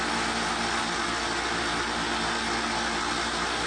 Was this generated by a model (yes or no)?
no